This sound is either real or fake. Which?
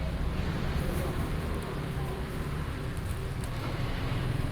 fake